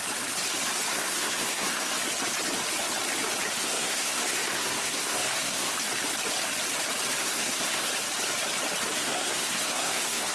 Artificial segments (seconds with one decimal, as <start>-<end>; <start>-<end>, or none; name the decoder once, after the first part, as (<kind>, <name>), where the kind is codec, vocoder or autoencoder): 0.9-1.9 (codec, SNAC); 3.6-5.7; 7.2-7.9; 9.0-10.3

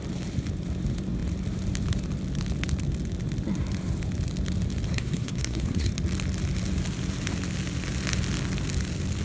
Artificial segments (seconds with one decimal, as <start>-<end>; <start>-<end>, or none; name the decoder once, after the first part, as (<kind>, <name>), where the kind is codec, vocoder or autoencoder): 4.9-5.9 (codec, SNAC)

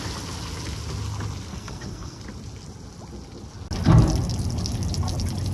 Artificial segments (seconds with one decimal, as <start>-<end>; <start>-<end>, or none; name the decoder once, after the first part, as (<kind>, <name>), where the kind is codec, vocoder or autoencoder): 1.5-2.2 (codec, SNAC)

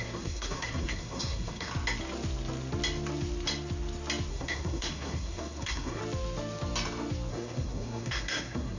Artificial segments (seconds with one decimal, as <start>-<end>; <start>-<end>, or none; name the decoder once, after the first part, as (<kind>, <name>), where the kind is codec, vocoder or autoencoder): 0.0-1.7 (codec, SNAC); 4.3-6.0; 7.3-8.8

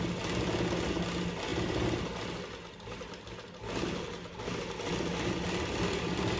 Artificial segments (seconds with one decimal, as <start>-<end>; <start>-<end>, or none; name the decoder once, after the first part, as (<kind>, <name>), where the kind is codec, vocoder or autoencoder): none

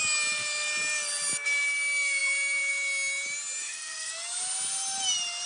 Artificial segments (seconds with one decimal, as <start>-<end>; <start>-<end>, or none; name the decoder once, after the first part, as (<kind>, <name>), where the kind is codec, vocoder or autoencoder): 3.6-4.1 (codec, SNAC)

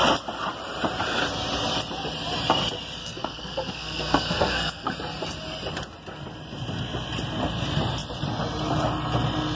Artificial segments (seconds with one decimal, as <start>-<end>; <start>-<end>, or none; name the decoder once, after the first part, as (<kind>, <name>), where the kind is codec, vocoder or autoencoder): 3.0-4.9 (codec, SNAC)

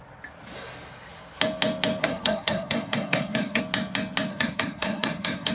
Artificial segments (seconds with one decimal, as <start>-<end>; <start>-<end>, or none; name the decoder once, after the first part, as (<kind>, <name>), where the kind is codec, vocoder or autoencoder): 2.0-3.6 (codec, SNAC); 4.3-5.5